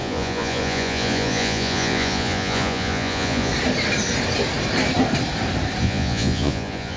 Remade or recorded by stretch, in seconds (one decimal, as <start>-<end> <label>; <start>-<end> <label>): 0.0-3.5 remade; 3.5-5.8 recorded; 5.8-7.0 remade